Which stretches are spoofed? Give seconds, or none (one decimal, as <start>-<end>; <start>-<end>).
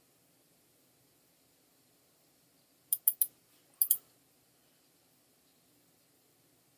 none